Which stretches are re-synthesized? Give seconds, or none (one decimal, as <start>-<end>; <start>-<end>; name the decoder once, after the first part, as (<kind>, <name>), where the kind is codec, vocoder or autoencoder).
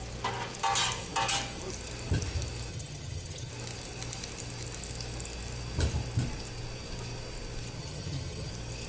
2.7-3.5 (vocoder, HiFi-GAN); 7.8-8.5